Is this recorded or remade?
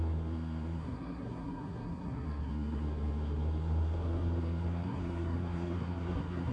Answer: remade